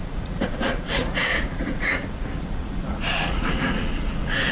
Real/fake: fake